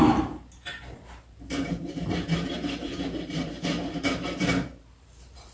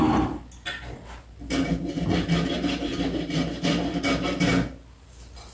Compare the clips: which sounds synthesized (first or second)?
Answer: first